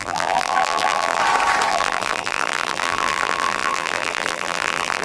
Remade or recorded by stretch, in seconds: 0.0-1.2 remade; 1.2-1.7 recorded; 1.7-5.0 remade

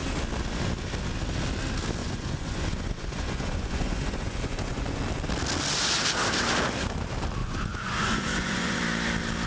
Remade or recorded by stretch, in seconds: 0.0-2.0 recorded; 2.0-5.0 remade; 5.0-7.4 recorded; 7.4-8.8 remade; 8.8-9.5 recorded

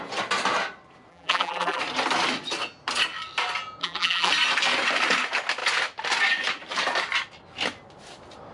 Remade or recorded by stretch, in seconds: 0.0-1.1 recorded; 1.1-1.8 remade; 1.8-3.8 recorded; 3.8-4.3 remade; 4.3-8.5 recorded